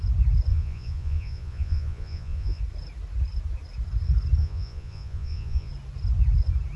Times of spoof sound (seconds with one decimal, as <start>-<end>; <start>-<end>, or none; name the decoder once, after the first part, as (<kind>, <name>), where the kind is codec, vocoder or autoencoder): 0.5-2.6 (vocoder, Vocos); 4.4-5.7